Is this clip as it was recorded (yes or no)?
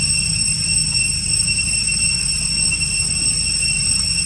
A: yes